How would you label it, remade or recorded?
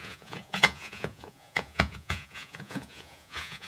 remade